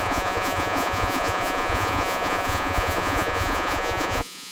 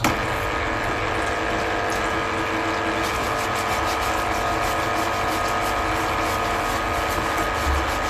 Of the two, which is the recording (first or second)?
second